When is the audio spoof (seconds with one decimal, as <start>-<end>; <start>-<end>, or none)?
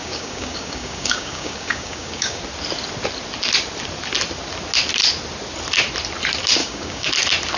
0.0-2.4; 6.6-7.1